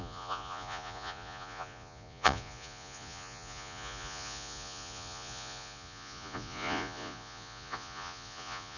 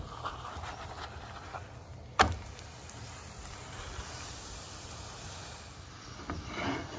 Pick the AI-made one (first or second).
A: first